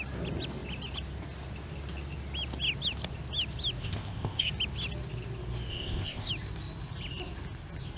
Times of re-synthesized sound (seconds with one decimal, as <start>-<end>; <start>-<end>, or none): 3.8-4.5; 5.7-6.3